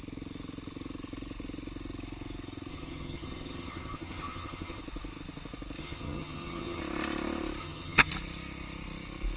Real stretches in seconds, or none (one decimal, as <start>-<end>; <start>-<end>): 0.0-2.7; 4.8-5.8; 6.8-7.6; 8.1-9.4